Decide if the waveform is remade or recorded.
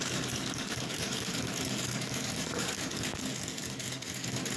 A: remade